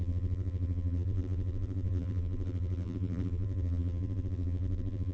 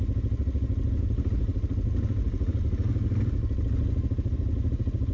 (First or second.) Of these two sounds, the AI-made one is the first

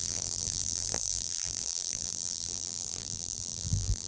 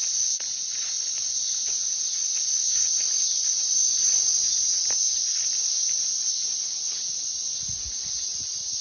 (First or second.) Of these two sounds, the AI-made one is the first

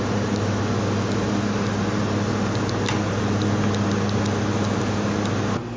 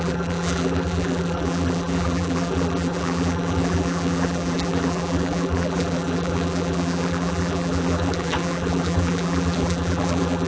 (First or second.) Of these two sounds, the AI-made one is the second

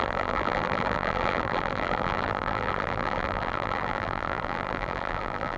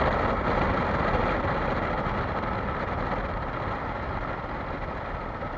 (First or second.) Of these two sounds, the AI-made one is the first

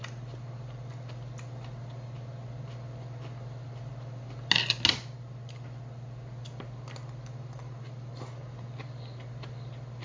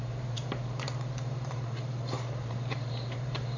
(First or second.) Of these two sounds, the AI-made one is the second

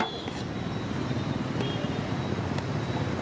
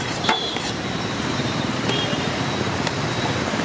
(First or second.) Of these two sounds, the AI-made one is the second